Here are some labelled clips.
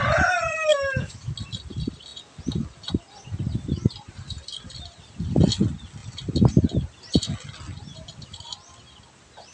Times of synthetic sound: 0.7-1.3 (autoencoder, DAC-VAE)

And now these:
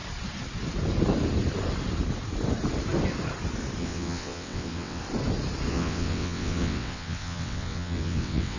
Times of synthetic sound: 3.8-5.0 (vocoder, WaveNeXt); 5.7-8.6

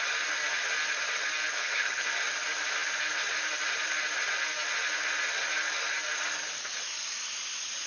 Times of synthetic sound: 1.5-2.1 (codec, HILCodec)